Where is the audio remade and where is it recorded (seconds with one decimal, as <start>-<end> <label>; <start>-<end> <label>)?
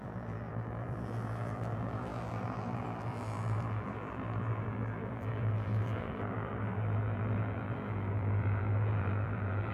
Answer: 0.0-9.7 remade